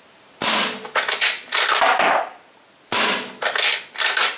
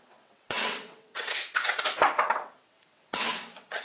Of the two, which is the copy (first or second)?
second